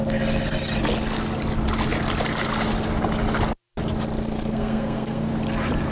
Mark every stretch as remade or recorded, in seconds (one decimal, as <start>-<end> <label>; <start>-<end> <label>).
0.0-4.5 recorded; 4.5-5.3 remade; 5.3-5.9 recorded